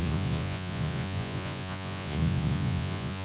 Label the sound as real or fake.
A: fake